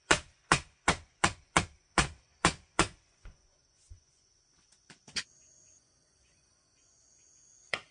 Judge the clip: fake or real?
fake